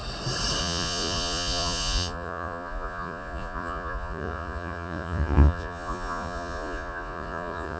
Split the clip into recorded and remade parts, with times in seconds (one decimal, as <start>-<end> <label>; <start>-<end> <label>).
0.0-0.6 recorded; 0.6-7.8 remade